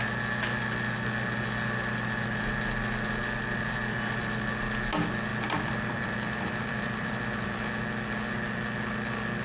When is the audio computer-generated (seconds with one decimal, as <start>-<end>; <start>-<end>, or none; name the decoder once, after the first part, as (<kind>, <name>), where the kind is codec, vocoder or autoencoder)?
5.3-7.6 (vocoder, BigVGAN v2)